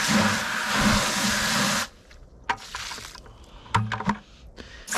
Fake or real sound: real